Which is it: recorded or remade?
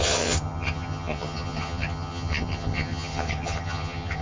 remade